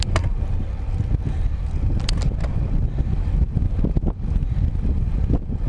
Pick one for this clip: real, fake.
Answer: real